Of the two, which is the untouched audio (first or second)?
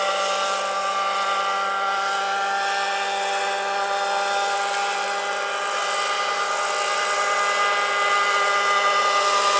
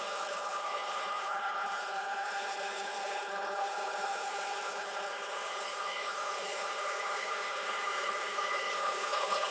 first